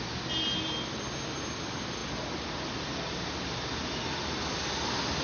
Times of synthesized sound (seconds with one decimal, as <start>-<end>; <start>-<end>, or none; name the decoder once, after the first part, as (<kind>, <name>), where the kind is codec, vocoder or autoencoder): none